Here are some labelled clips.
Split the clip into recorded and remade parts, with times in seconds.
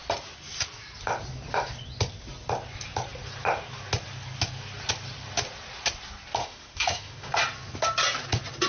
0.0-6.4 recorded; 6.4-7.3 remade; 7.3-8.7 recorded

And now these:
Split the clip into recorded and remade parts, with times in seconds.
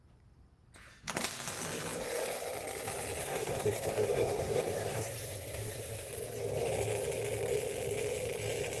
0.0-3.2 recorded; 3.2-6.1 remade; 6.1-8.8 recorded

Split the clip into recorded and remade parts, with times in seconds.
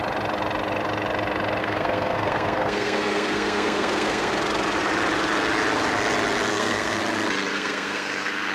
0.0-1.6 recorded; 1.6-4.3 remade; 4.3-6.5 recorded; 6.5-7.0 remade; 7.0-7.5 recorded; 7.5-8.5 remade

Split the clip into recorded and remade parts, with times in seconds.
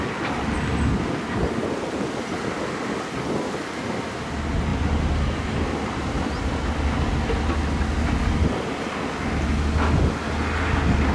0.0-11.1 recorded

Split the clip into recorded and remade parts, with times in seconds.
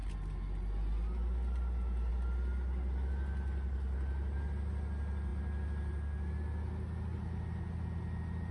0.0-8.5 recorded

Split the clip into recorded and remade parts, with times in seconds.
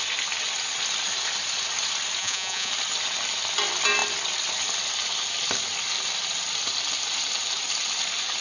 0.0-2.2 recorded; 2.2-2.7 remade; 2.7-8.4 recorded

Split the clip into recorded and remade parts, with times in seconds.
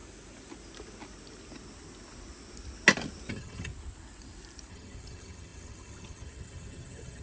0.0-3.3 recorded; 3.3-3.7 remade; 3.7-4.7 recorded; 4.7-7.2 remade